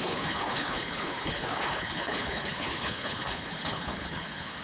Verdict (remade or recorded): remade